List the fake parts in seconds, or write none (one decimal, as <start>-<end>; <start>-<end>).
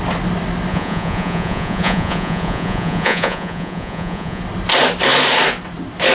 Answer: 0.7-4.4